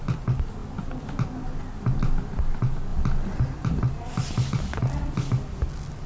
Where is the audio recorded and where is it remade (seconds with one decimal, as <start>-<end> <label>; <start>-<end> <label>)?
0.0-6.1 recorded